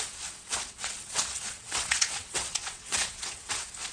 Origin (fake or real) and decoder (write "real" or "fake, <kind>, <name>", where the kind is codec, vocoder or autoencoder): fake, vocoder, WaveNeXt